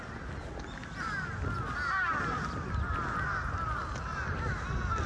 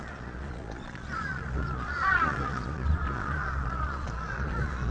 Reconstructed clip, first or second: second